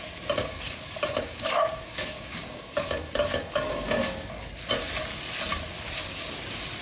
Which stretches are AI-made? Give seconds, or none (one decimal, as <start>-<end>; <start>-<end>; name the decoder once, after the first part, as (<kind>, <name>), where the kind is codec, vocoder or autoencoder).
0.4-4.5 (codec, DAC)